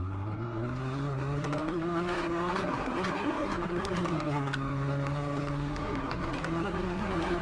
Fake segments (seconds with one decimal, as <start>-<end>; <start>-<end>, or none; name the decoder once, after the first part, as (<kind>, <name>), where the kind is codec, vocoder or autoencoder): 0.0-7.4 (codec, SNAC)